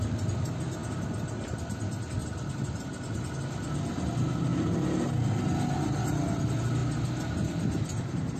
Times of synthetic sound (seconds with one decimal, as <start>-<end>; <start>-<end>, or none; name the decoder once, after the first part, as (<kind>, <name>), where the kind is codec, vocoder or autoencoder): none